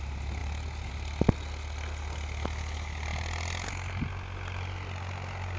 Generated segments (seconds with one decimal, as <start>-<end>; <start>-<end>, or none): none

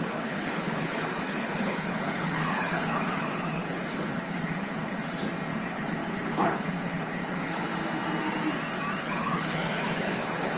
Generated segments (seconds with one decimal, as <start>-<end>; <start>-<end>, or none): 0.0-5.0; 5.6-7.7; 9.0-10.6

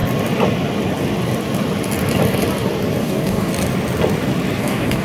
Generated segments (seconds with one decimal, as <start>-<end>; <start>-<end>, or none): 3.0-3.5; 4.6-5.0

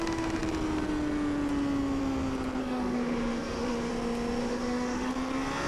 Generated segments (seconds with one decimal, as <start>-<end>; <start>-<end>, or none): 2.6-3.9; 4.4-5.1

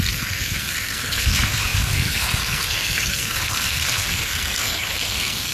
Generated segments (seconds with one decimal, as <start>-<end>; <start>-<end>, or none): 0.0-5.5